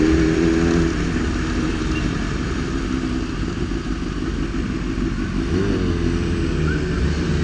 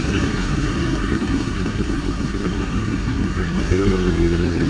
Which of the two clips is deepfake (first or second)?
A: second